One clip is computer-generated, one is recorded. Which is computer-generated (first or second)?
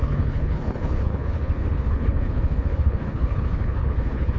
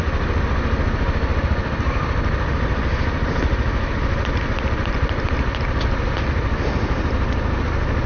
first